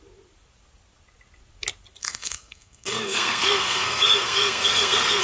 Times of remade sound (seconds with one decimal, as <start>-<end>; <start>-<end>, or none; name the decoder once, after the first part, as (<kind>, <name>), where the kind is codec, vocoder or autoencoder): 2.0-5.2 (codec, SNAC)

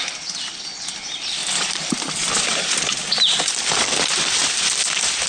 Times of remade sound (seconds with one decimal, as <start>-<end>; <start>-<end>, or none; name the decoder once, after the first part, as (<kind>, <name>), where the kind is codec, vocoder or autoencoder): 1.4-2.7 (vocoder, BigVGAN v2)

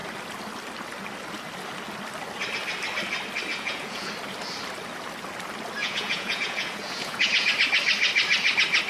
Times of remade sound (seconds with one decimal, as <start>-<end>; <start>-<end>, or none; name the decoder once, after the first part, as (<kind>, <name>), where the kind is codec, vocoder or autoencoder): 3.5-4.1 (vocoder, Vocos); 5.8-7.5

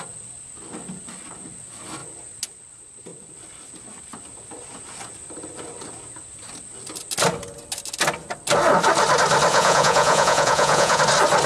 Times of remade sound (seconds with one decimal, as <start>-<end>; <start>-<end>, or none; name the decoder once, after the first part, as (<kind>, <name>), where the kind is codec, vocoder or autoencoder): 9.5-11.0 (vocoder, Vocos)

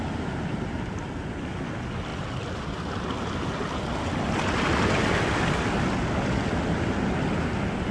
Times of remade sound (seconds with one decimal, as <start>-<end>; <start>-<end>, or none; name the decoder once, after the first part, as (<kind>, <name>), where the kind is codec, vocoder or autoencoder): none

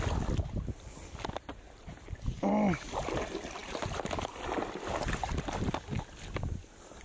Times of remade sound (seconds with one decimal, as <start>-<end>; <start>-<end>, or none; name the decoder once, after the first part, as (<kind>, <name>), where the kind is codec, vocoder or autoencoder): 1.5-2.5 (vocoder, BigVGAN v2)